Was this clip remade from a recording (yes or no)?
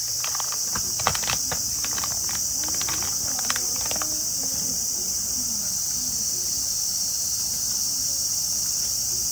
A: no